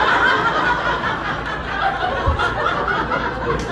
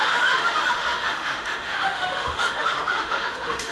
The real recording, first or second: first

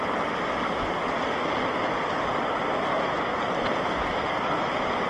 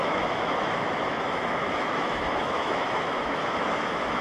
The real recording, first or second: first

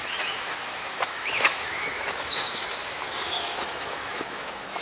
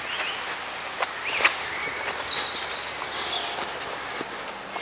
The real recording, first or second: second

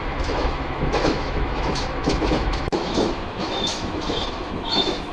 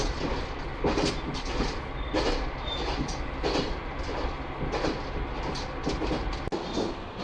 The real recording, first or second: second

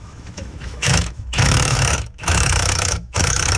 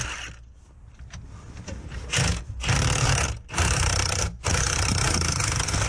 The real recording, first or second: second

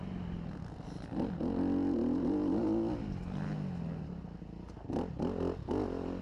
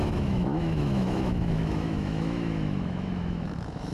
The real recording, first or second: first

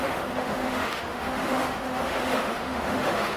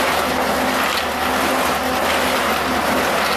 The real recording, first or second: second